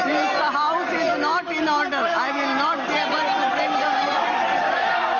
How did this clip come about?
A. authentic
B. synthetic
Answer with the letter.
A